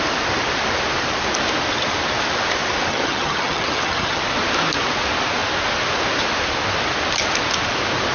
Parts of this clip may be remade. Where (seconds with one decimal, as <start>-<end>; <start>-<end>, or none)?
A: 2.9-4.2